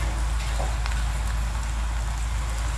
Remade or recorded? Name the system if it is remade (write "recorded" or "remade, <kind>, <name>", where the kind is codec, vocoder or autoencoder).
recorded